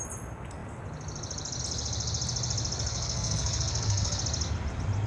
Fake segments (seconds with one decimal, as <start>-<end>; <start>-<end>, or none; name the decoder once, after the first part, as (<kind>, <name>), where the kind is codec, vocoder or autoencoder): 2.9-4.2 (codec, SNAC)